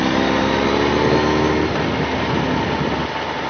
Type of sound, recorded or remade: recorded